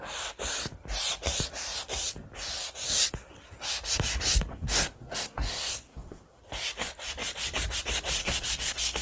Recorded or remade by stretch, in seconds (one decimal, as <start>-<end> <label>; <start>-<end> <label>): 0.0-4.5 recorded; 4.5-6.4 remade; 6.4-8.2 recorded; 8.2-9.0 remade